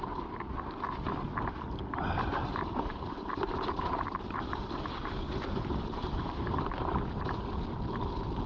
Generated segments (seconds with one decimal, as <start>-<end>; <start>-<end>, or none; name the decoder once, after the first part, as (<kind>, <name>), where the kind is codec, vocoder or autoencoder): 2.3-7.4 (vocoder, BigVGAN v2)